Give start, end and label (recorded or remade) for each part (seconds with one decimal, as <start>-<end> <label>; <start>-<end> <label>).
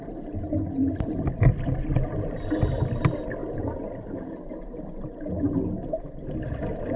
0.0-7.0 recorded